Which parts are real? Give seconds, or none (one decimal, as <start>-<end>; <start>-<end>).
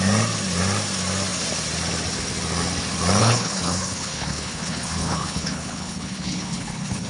0.0-3.2